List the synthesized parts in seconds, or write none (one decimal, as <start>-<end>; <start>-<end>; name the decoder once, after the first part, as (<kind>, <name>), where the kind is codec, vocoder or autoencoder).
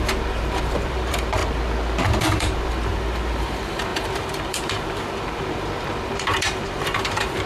0.0-1.4 (vocoder, BigVGAN v2); 2.2-7.5